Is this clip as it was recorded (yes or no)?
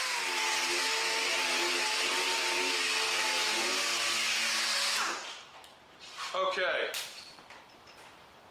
yes